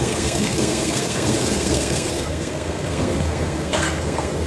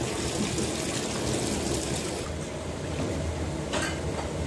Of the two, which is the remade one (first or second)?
first